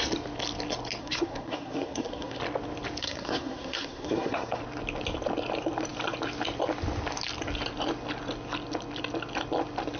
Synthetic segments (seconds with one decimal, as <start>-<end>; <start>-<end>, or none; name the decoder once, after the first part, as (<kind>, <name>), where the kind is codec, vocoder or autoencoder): 1.0-2.4 (codec, SNAC); 3.0-4.6